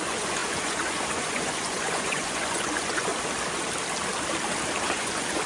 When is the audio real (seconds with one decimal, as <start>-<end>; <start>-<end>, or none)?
3.1-4.8